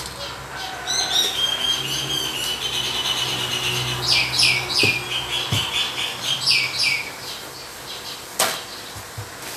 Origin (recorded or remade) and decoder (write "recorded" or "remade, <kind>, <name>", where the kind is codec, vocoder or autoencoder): recorded